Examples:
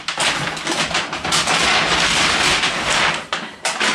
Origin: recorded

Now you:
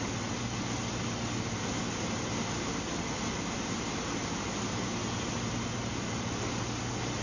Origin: recorded